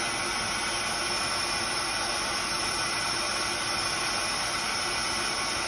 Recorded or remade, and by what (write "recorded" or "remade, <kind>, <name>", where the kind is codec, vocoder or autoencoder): recorded